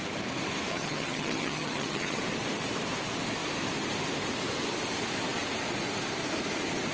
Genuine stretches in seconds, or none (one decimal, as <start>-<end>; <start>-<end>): 0.0-0.7; 2.2-6.9